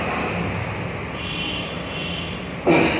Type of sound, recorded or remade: recorded